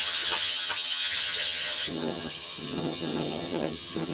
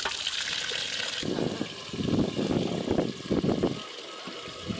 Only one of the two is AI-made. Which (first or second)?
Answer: first